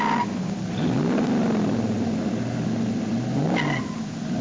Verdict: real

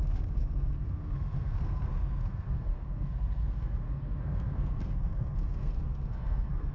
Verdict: fake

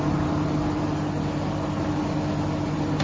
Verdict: real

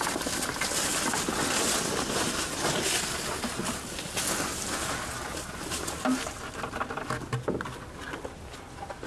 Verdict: real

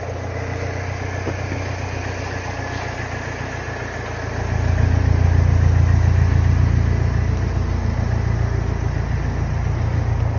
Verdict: real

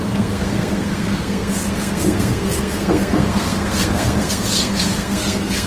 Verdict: fake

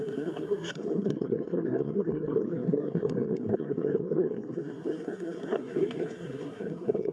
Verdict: fake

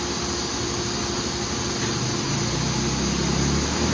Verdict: real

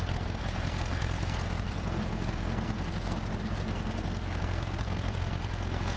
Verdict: fake